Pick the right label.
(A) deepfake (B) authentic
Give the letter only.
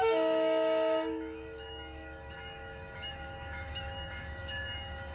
A